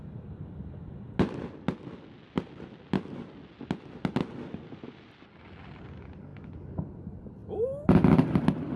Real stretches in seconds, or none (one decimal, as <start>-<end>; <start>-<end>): 0.0-8.8